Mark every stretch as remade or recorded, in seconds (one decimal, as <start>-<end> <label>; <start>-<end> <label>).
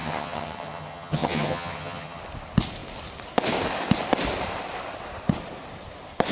0.0-2.2 remade; 2.2-6.3 recorded